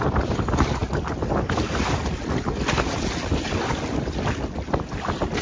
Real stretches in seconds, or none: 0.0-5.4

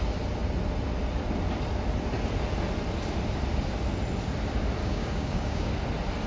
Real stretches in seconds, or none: 0.0-4.8; 5.7-6.3

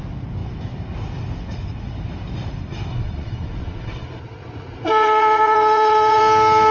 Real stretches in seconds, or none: 0.0-2.9; 6.2-6.7

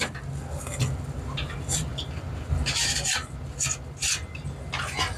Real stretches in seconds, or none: 0.0-5.2